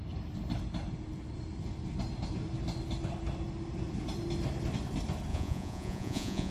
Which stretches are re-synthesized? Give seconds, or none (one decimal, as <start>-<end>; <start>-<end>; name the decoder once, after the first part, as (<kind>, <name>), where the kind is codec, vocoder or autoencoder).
5.3-6.5 (vocoder, Vocos)